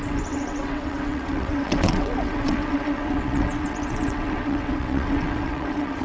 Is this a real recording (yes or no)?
no